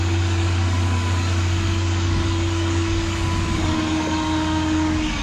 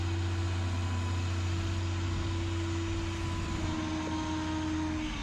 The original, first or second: second